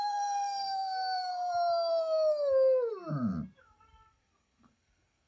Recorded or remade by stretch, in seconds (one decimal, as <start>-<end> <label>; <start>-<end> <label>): 0.0-1.3 remade; 1.3-3.6 recorded; 3.6-5.3 remade